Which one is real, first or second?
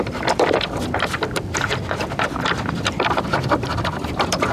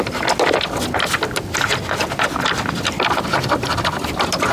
second